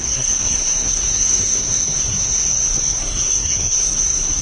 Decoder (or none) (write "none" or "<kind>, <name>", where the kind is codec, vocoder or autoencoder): codec, SNAC